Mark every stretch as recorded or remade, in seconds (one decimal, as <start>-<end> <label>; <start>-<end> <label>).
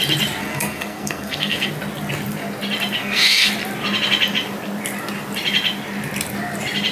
0.0-0.4 recorded; 0.4-1.7 remade; 1.7-3.0 recorded; 3.0-3.5 remade; 3.5-6.9 recorded